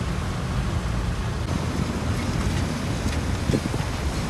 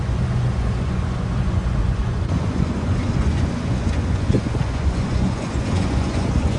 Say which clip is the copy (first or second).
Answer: second